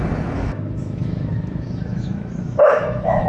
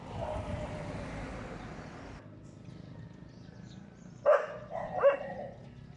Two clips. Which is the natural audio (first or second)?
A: second